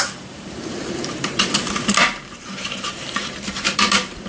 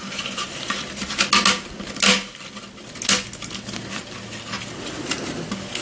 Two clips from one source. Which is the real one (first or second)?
second